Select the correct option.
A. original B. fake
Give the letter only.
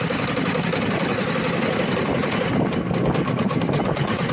A